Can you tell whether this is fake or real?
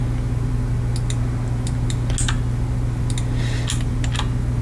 real